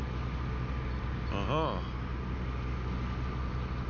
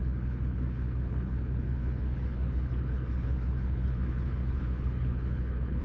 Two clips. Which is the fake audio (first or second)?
second